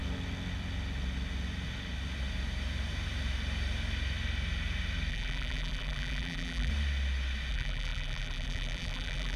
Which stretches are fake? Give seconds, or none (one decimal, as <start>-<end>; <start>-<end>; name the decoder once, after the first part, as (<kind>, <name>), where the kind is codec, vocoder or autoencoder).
5.1-6.7 (vocoder, BigVGAN v2); 7.5-9.4